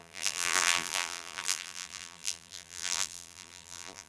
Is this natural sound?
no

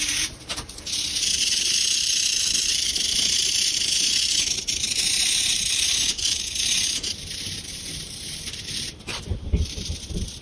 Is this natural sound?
no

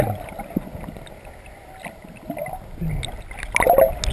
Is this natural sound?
yes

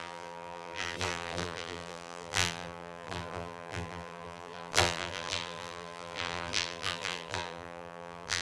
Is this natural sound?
no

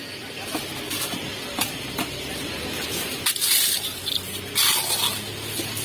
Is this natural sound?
yes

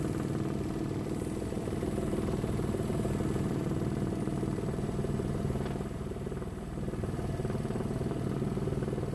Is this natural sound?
no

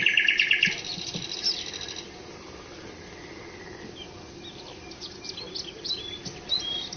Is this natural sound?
yes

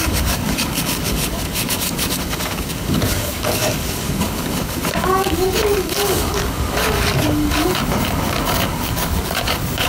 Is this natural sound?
no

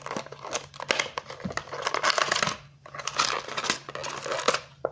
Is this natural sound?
yes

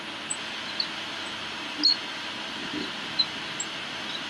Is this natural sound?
yes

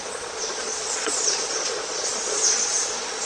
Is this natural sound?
no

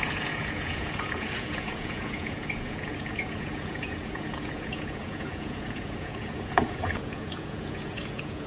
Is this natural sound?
no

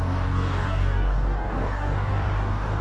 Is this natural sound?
no